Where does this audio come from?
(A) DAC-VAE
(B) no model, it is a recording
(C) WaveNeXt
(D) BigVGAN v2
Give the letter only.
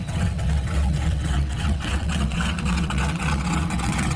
C